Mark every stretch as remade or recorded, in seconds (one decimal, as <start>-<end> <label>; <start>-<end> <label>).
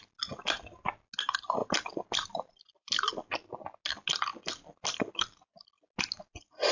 0.0-6.7 recorded